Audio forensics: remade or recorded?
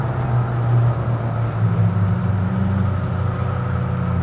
recorded